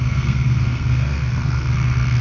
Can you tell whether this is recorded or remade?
remade